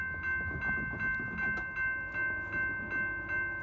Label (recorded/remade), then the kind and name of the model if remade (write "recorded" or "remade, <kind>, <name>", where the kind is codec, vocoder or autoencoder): recorded